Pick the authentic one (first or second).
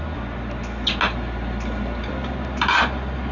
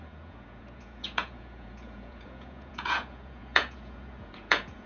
first